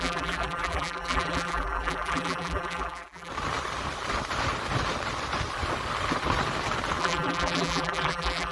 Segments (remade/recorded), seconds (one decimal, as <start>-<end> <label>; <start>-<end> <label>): 0.0-3.3 remade; 3.3-7.0 recorded; 7.0-8.5 remade